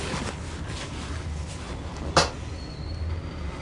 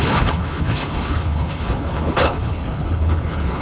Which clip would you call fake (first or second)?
second